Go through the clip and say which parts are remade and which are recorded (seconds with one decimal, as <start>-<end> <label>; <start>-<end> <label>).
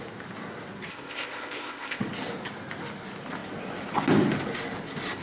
0.0-0.9 recorded; 0.9-2.0 remade; 2.0-5.2 recorded